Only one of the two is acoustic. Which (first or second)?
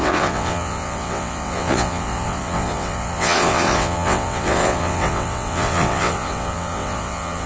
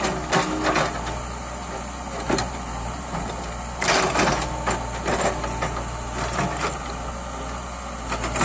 second